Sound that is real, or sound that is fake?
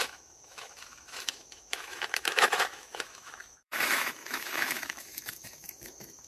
fake